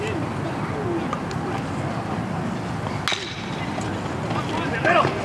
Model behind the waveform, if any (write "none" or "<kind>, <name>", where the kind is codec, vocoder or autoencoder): none